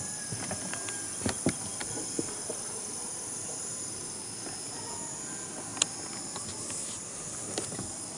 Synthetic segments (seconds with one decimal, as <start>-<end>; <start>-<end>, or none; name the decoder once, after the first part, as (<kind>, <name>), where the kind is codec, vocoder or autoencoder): none